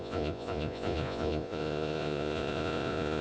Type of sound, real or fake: fake